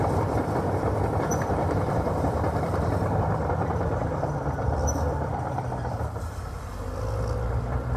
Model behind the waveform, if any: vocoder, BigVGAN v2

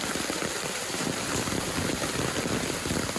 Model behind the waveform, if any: none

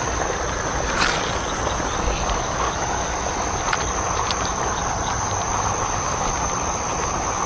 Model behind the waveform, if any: none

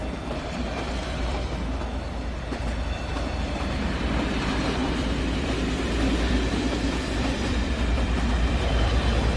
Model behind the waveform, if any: vocoder, BigVGAN v2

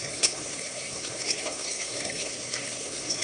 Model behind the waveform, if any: codec, SNAC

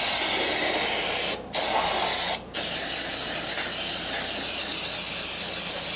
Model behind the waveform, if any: none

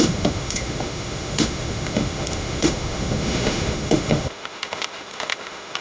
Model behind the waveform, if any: autoencoder, DAC-VAE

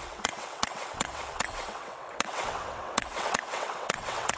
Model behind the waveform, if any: vocoder, WaveNeXt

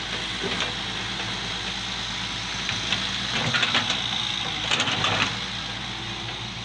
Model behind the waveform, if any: none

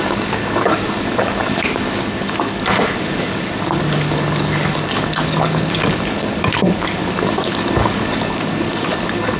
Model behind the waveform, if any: codec, DAC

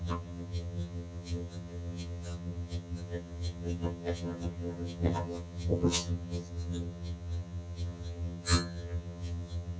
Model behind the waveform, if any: vocoder, HiFi-GAN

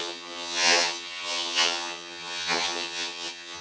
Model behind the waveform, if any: vocoder, HiFi-GAN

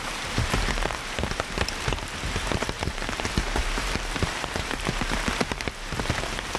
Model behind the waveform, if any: vocoder, BigVGAN v2